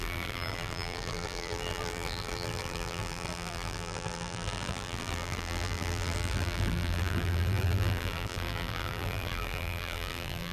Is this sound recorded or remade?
remade